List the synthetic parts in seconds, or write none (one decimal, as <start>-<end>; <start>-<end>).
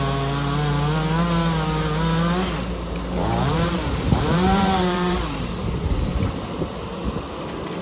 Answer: 3.2-5.5